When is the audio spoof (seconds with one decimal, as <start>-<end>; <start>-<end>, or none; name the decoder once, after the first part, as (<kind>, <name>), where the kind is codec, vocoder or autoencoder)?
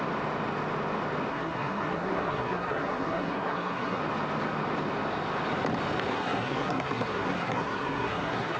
1.3-4.0 (codec, SNAC); 6.1-8.6